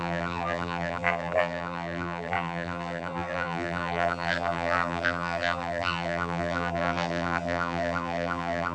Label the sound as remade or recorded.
remade